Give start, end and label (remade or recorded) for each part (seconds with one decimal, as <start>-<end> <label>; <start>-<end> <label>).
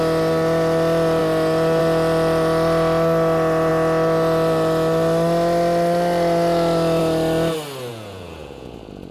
0.0-7.9 recorded; 7.9-9.1 remade